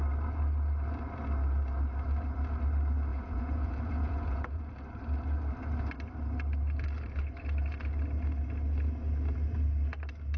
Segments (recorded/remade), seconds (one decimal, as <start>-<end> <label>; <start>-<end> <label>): 0.0-3.1 recorded; 3.1-4.7 remade; 4.7-10.4 recorded

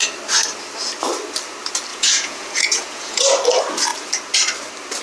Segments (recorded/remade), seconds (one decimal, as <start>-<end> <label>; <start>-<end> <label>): 0.0-1.9 recorded; 1.9-3.2 remade; 3.2-5.0 recorded

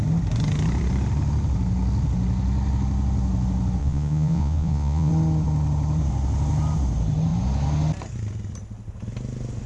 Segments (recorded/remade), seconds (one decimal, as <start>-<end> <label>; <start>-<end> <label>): 0.0-3.8 recorded; 3.8-5.1 remade; 5.1-9.7 recorded

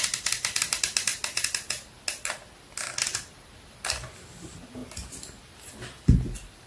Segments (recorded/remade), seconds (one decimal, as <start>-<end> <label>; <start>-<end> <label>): 0.0-6.7 recorded

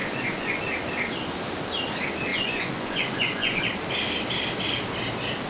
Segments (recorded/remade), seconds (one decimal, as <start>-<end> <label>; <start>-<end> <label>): 0.0-0.6 remade; 0.6-2.3 recorded; 2.3-3.6 remade; 3.6-5.5 recorded

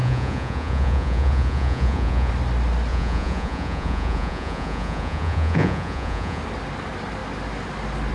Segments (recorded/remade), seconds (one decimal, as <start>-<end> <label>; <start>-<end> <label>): 0.0-2.3 remade; 2.3-2.9 recorded; 2.9-6.4 remade; 6.4-8.1 recorded

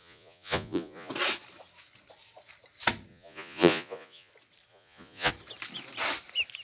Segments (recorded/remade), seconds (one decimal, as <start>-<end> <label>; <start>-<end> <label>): 0.0-1.1 remade; 1.1-3.1 recorded; 3.1-4.3 remade; 4.3-4.7 recorded; 4.7-5.3 remade; 5.3-6.6 recorded